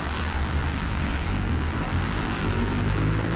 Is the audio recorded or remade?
remade